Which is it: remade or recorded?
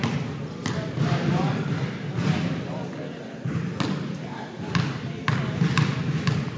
recorded